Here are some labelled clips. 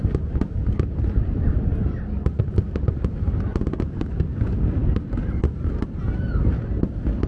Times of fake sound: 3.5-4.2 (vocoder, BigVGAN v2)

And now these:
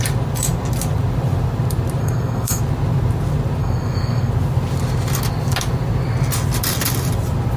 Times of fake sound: 2.0-2.6 (codec, SNAC); 3.6-4.3

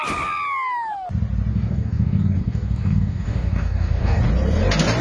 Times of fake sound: 1.5-4.2 (codec, DAC)

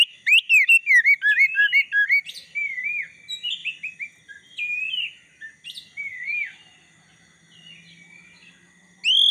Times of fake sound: none

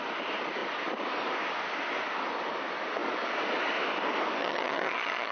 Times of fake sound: 4.4-5.3 (vocoder, HiFi-GAN)

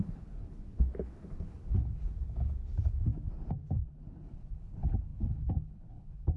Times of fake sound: 0.0-3.1 (codec, HILCodec); 3.7-6.4